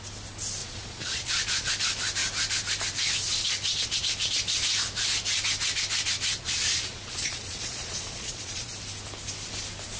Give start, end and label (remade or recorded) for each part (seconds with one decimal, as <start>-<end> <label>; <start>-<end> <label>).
0.0-0.6 recorded; 0.6-1.7 remade; 1.7-6.4 recorded; 6.4-8.7 remade; 8.7-10.0 recorded